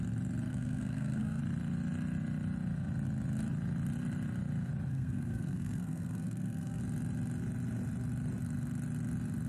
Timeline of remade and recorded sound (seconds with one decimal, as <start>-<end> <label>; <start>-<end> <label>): 0.0-0.5 recorded; 0.5-1.4 remade; 1.4-4.9 recorded; 4.9-6.8 remade; 6.8-9.5 recorded